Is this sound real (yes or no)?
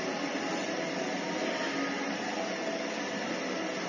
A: yes